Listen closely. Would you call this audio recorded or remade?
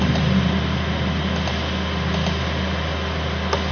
recorded